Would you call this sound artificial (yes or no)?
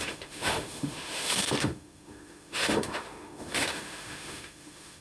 yes